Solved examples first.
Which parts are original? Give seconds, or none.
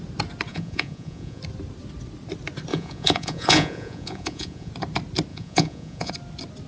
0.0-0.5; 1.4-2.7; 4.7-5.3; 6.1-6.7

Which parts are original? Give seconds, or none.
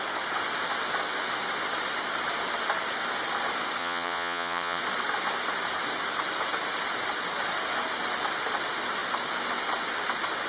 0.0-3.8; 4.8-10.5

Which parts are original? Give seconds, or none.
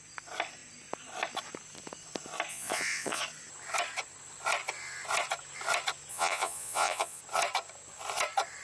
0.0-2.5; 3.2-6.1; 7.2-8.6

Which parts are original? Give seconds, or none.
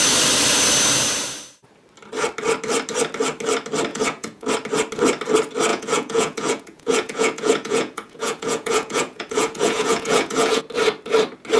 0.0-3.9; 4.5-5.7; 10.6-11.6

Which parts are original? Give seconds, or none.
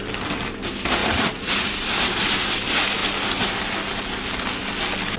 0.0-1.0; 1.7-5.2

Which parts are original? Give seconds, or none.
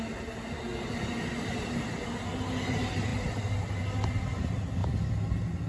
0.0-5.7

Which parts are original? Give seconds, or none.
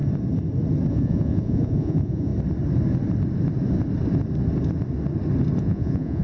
0.0-0.9; 2.3-5.6